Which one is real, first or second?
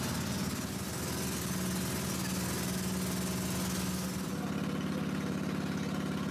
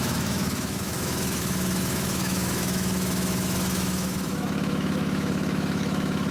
first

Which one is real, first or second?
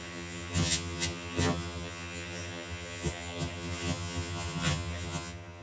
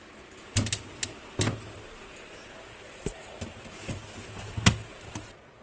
second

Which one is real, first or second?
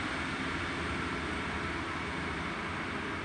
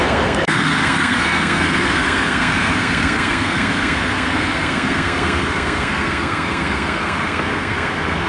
first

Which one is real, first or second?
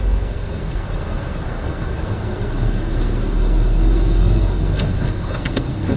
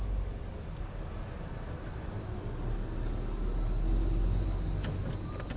second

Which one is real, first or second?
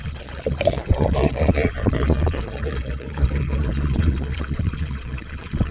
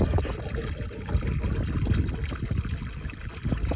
second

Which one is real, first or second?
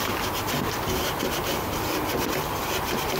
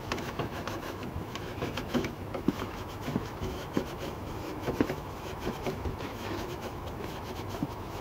first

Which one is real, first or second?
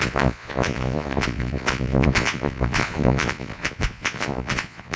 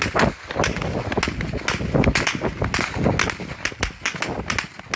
second